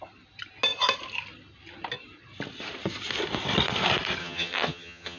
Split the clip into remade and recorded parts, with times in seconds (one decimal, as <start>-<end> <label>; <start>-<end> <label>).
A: 0.0-4.2 recorded; 4.2-5.2 remade